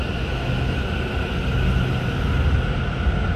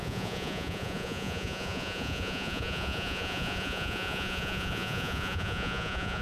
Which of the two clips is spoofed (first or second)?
second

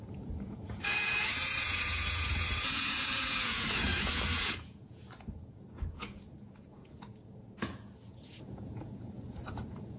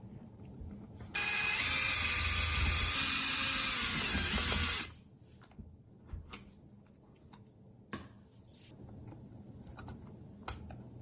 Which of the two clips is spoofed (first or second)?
first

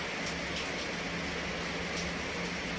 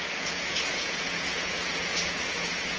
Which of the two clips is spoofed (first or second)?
second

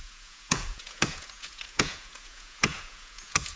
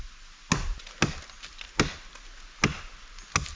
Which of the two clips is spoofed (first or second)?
first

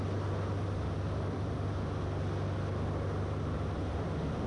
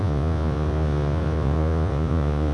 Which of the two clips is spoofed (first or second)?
second